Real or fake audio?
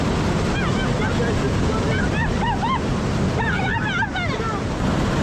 real